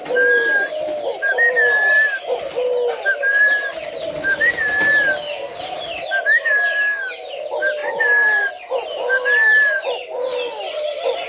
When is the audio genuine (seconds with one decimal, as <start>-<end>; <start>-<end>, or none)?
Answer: 0.0-11.3